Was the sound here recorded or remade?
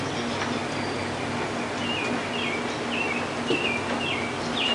recorded